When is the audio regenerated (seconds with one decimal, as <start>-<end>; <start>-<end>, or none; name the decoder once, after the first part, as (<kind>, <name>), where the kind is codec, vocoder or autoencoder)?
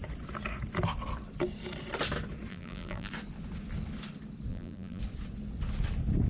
2.5-3.1 (vocoder, BigVGAN v2); 4.5-5.0